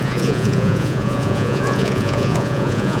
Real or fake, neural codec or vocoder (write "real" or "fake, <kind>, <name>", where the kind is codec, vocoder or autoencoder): fake, vocoder, Vocos